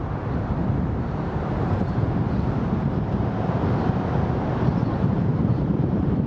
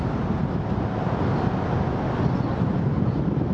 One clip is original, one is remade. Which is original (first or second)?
second